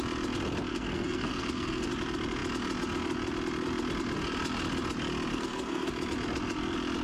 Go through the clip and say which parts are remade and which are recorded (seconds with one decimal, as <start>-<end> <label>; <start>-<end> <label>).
0.0-0.7 recorded; 0.7-1.9 remade; 1.9-5.3 recorded; 5.3-5.9 remade; 5.9-7.0 recorded